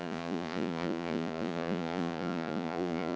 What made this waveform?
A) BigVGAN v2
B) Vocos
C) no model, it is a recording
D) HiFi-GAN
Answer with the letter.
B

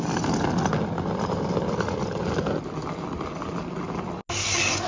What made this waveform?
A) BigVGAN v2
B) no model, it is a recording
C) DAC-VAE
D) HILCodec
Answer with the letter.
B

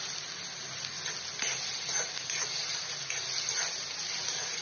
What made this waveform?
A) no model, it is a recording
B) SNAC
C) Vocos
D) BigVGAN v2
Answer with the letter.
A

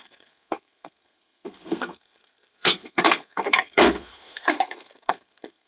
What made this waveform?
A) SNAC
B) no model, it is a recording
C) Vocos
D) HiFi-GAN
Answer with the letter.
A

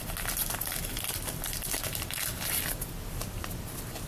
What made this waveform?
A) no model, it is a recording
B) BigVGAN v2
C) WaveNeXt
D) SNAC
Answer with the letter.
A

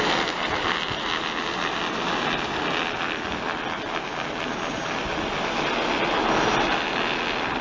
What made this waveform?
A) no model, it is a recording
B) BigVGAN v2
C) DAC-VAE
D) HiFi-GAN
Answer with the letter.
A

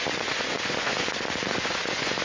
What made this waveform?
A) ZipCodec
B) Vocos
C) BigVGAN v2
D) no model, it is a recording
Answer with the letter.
B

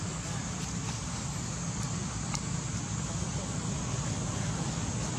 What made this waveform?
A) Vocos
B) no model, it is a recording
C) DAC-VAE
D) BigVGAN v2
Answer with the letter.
B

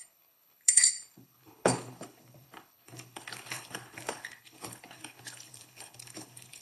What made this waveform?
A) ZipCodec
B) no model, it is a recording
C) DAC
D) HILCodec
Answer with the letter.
D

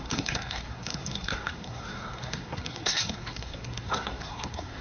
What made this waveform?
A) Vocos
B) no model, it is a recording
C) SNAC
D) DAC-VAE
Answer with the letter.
C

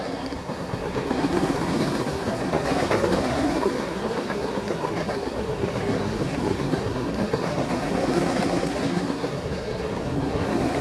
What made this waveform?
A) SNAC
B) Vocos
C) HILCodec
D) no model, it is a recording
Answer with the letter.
A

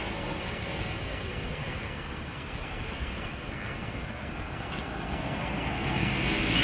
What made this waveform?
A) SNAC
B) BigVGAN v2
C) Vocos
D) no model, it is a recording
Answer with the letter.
A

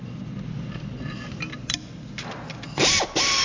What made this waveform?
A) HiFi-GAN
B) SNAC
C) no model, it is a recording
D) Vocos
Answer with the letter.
C